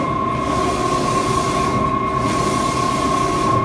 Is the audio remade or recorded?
recorded